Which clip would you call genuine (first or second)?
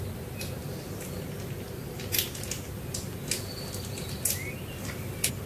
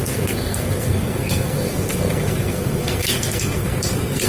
first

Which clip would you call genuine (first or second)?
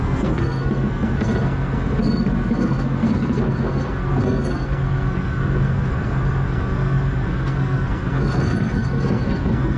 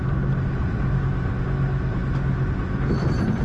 second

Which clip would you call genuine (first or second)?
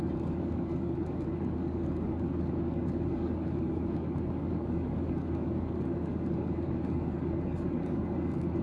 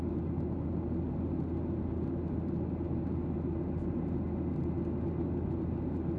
second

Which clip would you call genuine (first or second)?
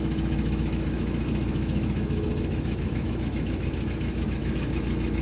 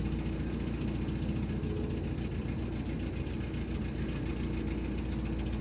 second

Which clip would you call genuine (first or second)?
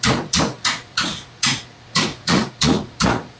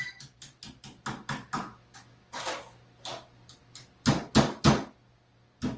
second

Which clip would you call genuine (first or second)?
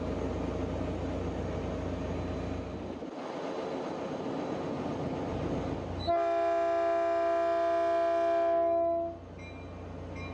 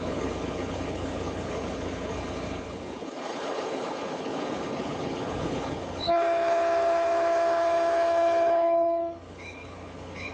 first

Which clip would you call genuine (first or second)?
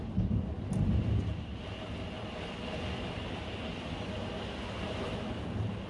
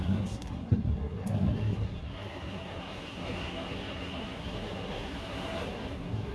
first